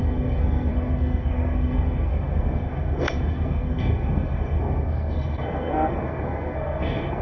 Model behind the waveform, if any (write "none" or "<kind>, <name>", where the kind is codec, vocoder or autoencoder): codec, SNAC